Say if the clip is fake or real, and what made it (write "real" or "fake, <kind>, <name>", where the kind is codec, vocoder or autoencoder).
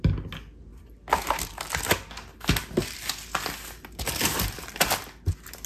real